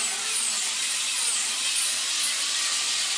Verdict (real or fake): real